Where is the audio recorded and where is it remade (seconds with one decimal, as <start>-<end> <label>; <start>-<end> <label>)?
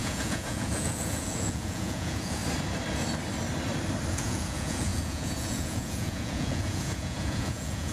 0.0-2.4 remade; 2.4-4.1 recorded; 4.1-7.9 remade